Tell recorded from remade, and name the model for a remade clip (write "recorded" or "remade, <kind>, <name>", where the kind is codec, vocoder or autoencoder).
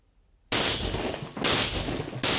recorded